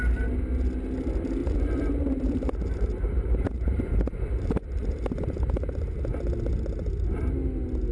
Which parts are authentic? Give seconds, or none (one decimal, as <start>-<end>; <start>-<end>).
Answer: 0.0-1.4; 6.1-7.9